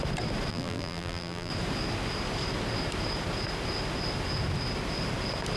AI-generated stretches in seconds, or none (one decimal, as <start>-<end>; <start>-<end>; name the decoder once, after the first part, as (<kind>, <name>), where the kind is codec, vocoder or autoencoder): 0.5-1.5 (vocoder, BigVGAN v2)